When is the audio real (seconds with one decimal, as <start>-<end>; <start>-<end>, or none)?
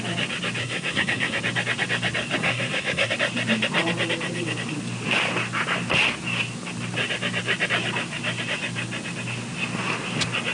0.0-0.6; 1.4-2.4; 3.1-10.5